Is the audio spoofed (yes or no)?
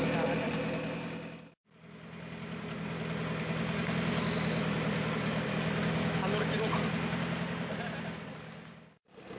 no